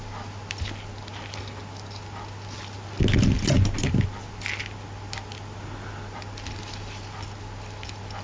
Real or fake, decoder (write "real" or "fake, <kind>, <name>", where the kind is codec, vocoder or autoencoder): real